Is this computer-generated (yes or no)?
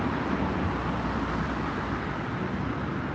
no